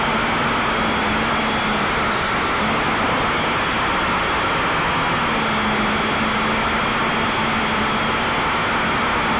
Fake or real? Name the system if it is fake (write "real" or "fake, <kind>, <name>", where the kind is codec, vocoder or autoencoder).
real